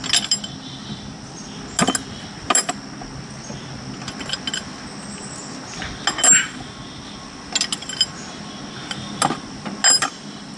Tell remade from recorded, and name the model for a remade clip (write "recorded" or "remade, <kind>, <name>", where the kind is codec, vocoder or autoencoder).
recorded